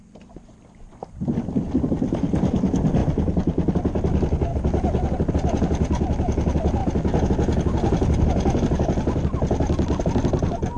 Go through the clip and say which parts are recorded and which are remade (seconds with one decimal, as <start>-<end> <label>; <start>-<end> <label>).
0.0-10.8 recorded